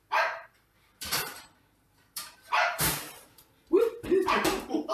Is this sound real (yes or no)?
no